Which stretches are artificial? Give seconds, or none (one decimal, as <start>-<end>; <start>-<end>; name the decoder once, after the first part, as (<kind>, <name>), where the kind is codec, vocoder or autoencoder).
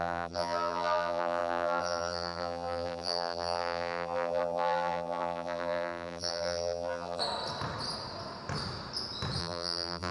0.0-7.2 (vocoder, BigVGAN v2); 9.4-10.1